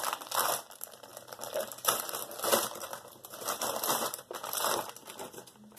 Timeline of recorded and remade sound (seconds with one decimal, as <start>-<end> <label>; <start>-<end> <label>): 0.0-1.1 recorded; 1.1-4.6 remade; 4.6-5.8 recorded